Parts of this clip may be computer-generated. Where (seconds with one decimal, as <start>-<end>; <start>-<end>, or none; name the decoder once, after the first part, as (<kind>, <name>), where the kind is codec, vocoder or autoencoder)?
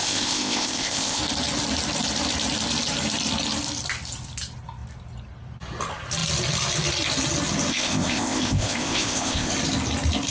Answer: 0.0-1.2 (codec, ZipCodec); 7.7-9.5